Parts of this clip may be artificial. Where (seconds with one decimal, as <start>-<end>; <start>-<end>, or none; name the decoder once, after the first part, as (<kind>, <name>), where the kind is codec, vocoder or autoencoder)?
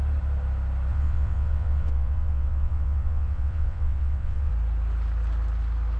0.9-4.5 (vocoder, WaveNeXt)